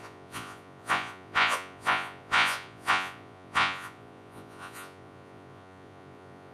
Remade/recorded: remade